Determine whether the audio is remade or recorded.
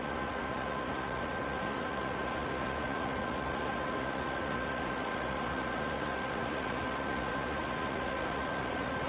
remade